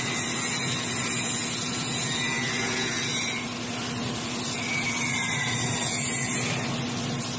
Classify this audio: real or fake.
real